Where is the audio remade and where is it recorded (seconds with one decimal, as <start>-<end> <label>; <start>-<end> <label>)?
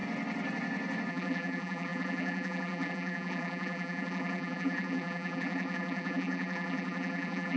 0.0-1.1 recorded; 1.1-7.6 remade